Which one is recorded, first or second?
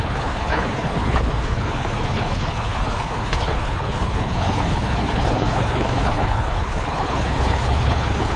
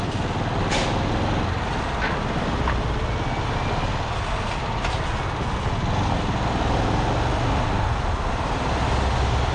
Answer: second